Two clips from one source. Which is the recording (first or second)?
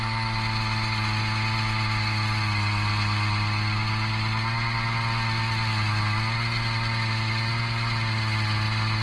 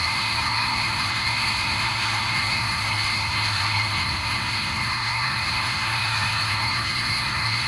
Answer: first